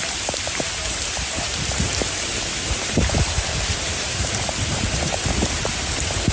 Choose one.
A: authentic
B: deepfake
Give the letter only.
B